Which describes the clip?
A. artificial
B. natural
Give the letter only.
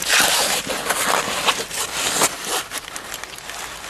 B